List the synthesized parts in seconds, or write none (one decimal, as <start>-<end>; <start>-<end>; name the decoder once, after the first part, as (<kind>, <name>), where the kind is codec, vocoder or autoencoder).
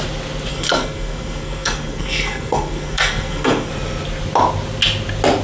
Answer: 0.5-3.7 (codec, SNAC)